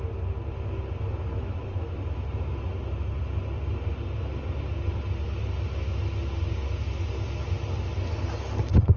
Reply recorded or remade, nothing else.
recorded